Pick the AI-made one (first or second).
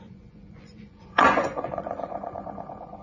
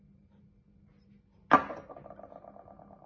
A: first